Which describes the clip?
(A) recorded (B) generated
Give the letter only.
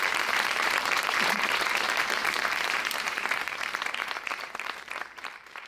B